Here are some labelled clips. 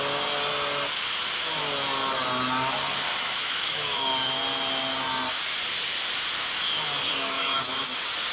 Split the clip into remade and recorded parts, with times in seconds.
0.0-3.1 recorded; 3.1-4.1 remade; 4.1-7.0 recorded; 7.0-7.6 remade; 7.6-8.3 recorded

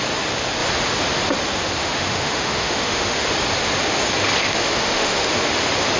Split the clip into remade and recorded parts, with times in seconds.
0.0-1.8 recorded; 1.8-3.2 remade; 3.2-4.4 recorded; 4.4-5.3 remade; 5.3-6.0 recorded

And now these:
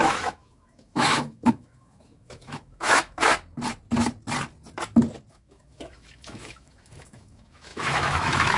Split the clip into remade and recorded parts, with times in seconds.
0.0-3.3 remade; 3.3-5.3 recorded; 5.3-8.6 remade

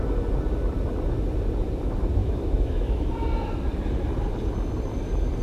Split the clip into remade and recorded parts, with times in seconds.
0.0-2.2 recorded; 2.2-3.1 remade; 3.1-5.4 recorded

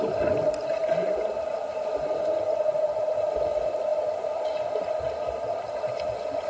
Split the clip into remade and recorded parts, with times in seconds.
0.0-6.5 recorded